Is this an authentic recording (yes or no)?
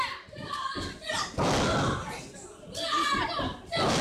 yes